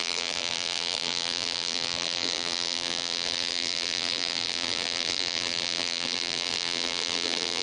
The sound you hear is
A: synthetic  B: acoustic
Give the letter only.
A